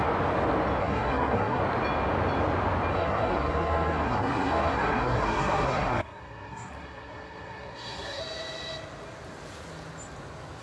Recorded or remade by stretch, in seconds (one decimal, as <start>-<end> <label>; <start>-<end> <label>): 0.0-0.8 recorded; 0.8-1.6 remade; 1.6-2.9 recorded; 2.9-8.2 remade; 8.2-10.6 recorded